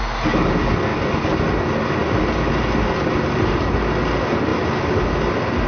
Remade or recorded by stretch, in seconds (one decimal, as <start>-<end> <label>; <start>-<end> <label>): 0.0-5.7 recorded